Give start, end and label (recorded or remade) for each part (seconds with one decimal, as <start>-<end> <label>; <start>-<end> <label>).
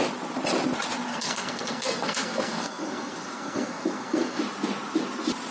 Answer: 0.0-1.1 recorded; 1.1-4.4 remade; 4.4-5.5 recorded